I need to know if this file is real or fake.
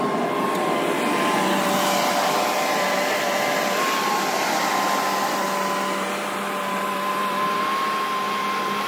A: real